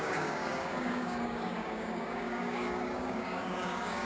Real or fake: fake